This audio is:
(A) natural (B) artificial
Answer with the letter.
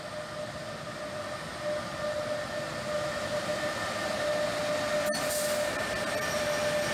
A